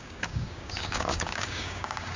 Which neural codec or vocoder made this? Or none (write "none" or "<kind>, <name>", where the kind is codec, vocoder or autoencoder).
codec, DAC